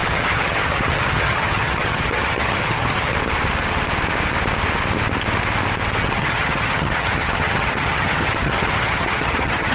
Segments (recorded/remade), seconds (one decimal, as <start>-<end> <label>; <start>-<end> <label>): 0.0-3.1 remade; 3.1-6.0 recorded; 6.0-9.7 remade